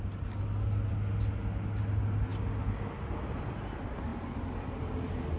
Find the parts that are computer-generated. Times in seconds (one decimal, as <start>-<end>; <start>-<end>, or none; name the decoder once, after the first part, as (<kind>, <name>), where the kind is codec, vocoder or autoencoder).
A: none